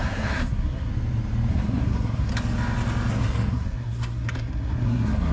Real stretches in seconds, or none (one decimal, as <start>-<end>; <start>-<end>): 0.9-1.5; 2.3-3.1